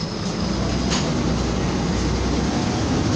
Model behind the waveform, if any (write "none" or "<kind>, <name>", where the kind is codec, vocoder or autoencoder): none